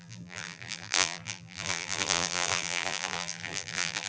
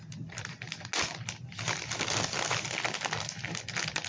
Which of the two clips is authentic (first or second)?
second